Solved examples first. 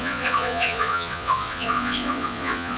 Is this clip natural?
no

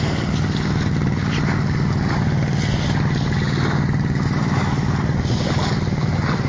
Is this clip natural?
yes